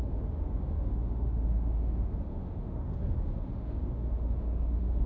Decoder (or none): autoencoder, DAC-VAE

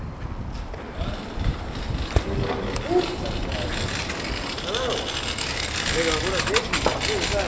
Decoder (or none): none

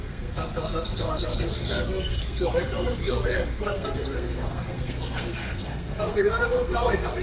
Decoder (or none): codec, SNAC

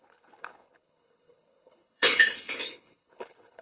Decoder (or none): codec, HILCodec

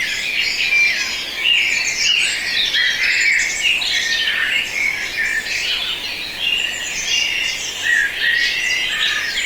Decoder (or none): none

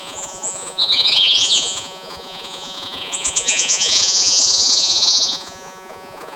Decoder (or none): vocoder, Vocos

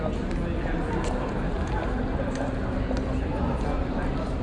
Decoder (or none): none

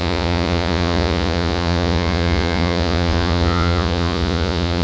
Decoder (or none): vocoder, Vocos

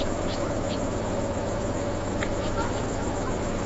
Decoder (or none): autoencoder, DAC-VAE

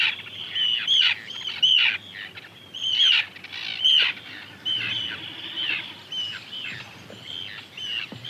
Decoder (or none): none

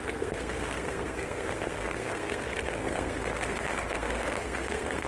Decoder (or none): codec, SNAC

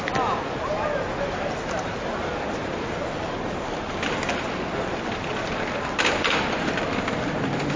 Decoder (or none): none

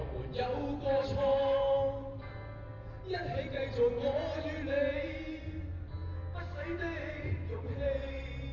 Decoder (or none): none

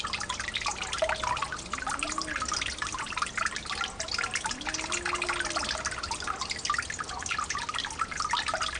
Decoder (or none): none